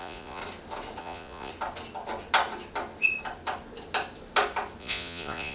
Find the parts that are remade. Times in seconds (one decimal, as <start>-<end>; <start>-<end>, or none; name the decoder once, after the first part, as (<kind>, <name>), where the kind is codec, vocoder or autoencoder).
0.0-0.4 (vocoder, Vocos); 1.0-1.5; 4.8-5.5